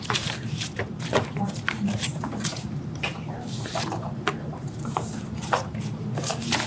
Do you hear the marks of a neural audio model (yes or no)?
yes